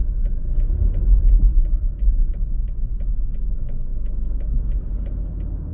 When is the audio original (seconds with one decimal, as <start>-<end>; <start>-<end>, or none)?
0.0-3.9; 4.6-5.7